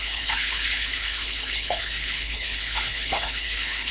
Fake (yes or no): yes